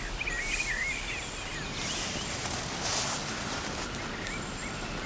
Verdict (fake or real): real